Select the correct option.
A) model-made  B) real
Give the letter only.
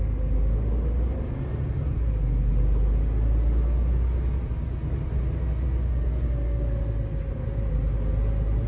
B